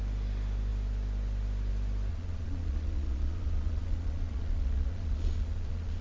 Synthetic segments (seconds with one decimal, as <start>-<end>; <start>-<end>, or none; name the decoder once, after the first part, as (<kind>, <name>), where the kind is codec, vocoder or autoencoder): 2.1-6.0 (vocoder, Vocos)